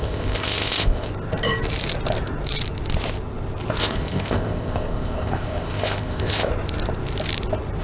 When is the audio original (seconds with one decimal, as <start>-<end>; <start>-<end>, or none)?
1.1-3.8; 6.5-7.8